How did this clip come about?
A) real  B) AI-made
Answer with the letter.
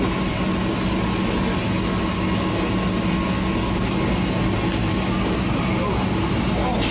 A